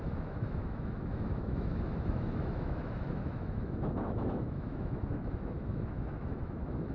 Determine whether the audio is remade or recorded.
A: remade